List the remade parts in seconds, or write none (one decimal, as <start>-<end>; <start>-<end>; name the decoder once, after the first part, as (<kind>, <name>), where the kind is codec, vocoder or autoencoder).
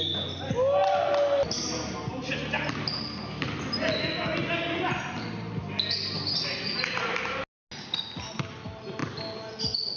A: none